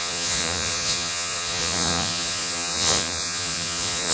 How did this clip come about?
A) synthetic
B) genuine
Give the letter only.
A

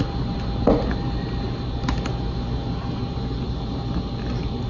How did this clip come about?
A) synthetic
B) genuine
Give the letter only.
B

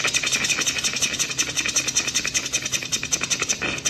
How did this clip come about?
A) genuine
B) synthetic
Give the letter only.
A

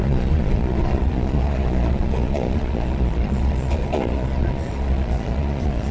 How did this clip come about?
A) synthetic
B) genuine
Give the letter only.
A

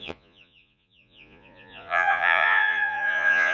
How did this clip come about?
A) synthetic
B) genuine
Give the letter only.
A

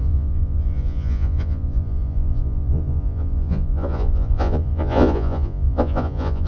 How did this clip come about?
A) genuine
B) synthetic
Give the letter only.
B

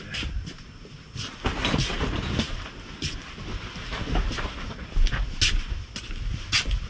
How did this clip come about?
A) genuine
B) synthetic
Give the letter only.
A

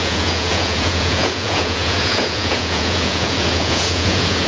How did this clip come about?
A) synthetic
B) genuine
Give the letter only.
A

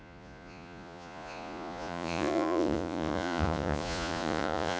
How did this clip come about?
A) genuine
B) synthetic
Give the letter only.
B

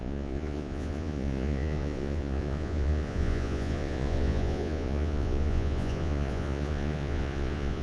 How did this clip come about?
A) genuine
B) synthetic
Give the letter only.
B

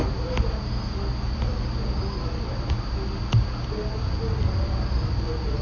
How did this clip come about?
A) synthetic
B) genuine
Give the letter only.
B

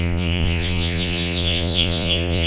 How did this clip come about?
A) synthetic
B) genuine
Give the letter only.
A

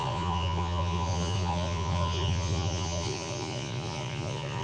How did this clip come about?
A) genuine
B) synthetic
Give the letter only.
B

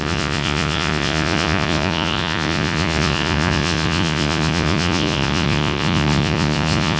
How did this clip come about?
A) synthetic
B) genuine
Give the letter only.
A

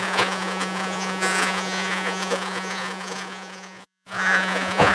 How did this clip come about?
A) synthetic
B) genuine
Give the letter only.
A